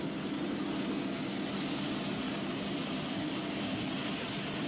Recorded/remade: recorded